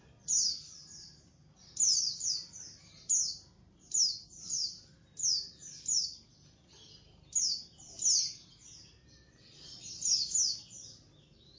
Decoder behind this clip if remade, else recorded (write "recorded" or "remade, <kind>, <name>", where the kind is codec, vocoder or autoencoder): recorded